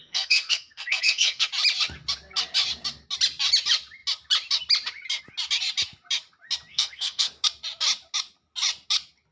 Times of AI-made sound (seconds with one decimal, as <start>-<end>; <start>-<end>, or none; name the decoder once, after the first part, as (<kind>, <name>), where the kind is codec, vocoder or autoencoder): 0.0-1.5 (codec, SNAC); 6.7-7.3